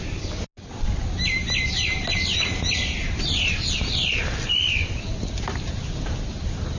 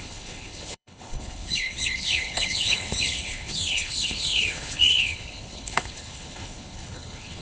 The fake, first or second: second